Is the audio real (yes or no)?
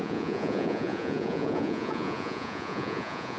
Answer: no